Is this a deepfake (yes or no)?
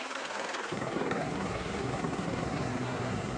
yes